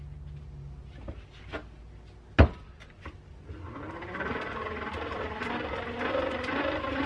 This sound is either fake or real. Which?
real